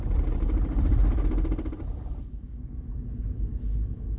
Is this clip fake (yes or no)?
yes